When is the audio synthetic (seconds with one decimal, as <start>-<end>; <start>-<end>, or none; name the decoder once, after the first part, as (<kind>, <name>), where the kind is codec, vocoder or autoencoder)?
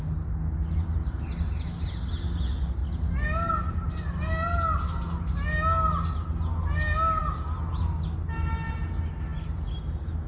none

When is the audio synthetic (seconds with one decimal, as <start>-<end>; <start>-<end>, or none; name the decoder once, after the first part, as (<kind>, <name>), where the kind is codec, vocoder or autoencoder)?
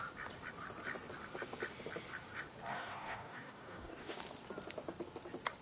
2.7-4.2 (codec, DAC)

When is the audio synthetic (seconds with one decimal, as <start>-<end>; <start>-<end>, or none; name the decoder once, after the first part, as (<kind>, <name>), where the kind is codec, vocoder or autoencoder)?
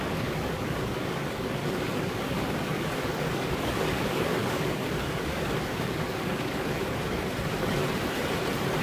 0.0-7.8 (codec, DAC)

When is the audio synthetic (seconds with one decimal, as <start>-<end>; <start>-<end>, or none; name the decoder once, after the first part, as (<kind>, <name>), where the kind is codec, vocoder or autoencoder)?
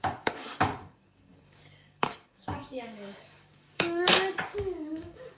0.0-5.4 (codec, DAC)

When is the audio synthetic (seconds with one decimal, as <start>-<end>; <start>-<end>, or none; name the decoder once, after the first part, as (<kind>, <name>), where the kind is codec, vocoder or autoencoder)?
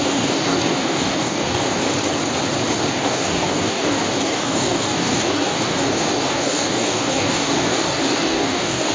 0.0-1.8 (codec, DAC); 2.9-8.9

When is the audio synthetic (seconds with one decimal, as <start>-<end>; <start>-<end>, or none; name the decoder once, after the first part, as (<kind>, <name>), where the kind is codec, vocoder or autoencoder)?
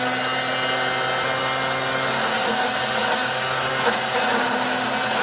none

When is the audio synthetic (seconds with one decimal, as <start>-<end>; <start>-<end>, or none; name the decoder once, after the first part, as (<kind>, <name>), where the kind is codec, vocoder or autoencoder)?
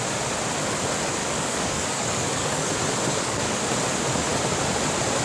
1.2-2.7 (codec, DAC); 3.1-3.6